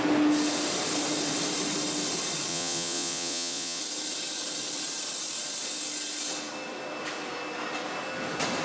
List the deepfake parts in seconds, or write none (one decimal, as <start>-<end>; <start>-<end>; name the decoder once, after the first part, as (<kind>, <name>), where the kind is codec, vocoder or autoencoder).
2.5-3.8 (vocoder, Vocos)